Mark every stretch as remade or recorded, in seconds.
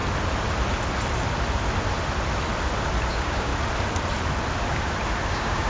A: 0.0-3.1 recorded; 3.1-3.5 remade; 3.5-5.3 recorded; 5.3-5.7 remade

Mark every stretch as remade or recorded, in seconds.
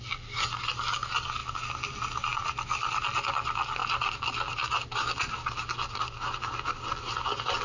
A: 0.0-7.6 recorded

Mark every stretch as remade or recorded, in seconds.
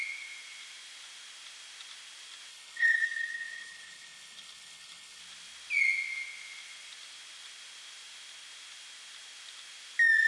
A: 0.0-2.5 recorded; 2.5-5.2 remade; 5.2-10.3 recorded